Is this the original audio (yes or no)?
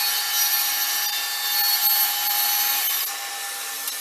yes